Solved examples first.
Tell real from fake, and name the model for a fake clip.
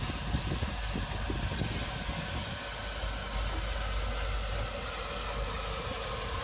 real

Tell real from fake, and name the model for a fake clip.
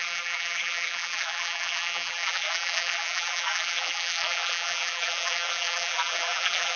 fake, vocoder, BigVGAN v2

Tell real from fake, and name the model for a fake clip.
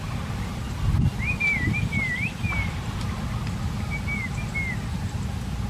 real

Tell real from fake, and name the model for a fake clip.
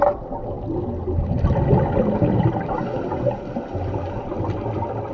real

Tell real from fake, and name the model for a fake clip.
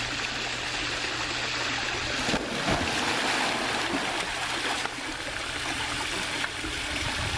real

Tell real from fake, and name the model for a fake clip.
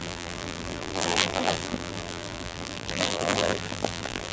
fake, vocoder, BigVGAN v2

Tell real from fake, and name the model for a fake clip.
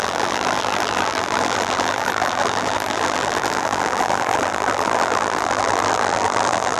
fake, vocoder, BigVGAN v2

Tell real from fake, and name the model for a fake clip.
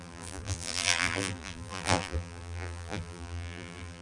fake, vocoder, BigVGAN v2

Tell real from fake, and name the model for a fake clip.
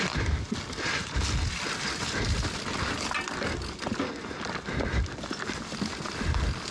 real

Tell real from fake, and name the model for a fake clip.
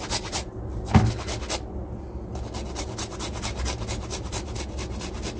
real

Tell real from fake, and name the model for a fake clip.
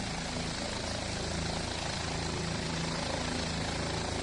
real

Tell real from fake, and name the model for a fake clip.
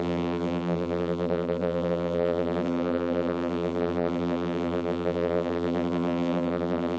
fake, vocoder, BigVGAN v2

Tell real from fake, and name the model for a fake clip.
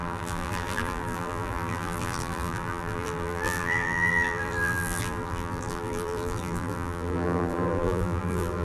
fake, vocoder, BigVGAN v2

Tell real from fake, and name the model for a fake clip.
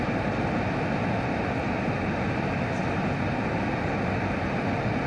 real